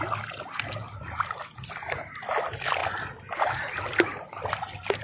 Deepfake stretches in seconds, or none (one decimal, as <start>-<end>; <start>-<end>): none